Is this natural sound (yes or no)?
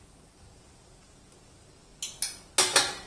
yes